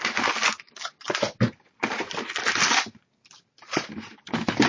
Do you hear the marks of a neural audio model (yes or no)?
no